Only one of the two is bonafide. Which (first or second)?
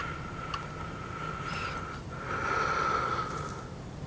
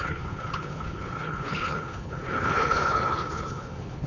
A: first